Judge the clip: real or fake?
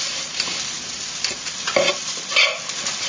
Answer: fake